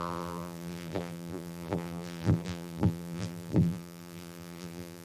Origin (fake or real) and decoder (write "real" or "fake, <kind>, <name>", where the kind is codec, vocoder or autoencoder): fake, vocoder, BigVGAN v2